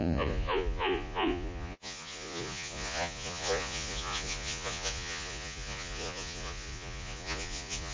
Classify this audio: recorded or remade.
remade